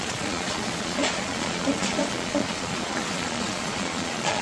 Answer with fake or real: fake